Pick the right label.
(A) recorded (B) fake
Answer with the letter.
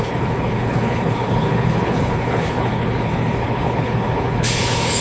B